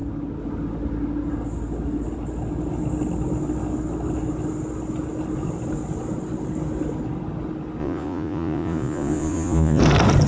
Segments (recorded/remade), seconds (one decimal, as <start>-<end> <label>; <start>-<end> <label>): 0.0-7.8 recorded; 7.8-9.8 remade; 9.8-10.3 recorded